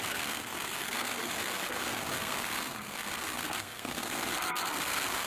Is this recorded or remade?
remade